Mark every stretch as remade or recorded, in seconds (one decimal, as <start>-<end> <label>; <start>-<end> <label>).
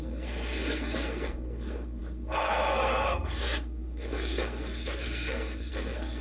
0.0-6.2 remade